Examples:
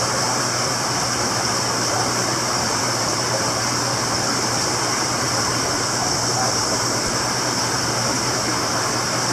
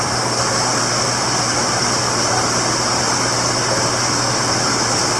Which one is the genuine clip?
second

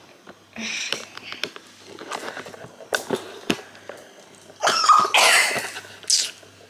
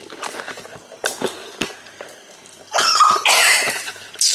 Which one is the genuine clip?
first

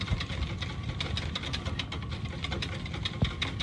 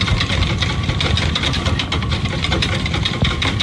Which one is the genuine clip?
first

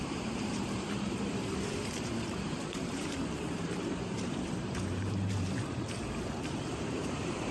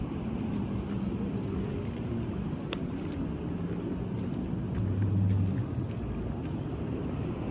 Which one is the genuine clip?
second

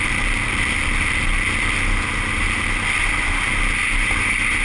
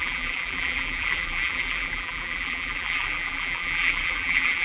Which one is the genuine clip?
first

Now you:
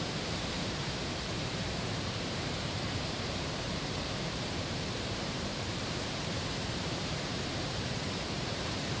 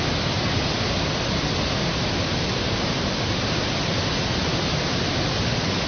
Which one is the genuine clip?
second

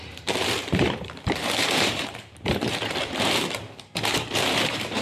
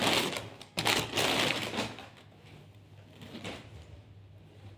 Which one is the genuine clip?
second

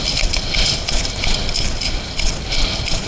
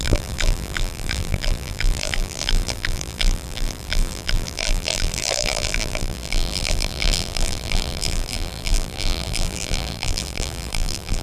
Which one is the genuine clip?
first